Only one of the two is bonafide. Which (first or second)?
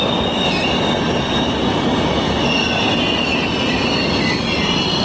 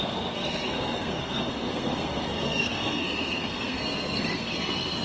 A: first